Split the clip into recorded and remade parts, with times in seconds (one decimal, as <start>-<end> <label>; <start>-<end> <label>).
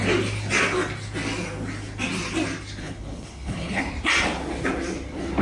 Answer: 0.0-2.8 recorded; 2.8-3.8 remade; 3.8-5.4 recorded